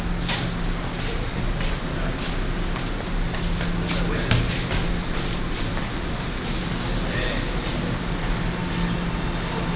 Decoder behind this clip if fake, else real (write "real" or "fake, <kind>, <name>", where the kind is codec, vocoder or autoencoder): real